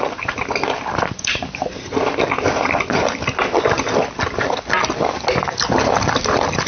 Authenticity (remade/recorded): recorded